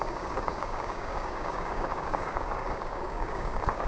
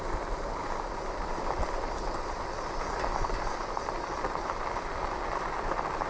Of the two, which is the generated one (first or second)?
first